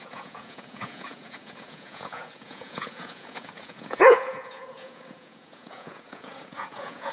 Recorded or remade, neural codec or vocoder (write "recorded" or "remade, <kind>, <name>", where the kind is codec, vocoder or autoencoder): remade, vocoder, Vocos